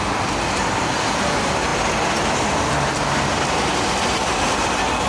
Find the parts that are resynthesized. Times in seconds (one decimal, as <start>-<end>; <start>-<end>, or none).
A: none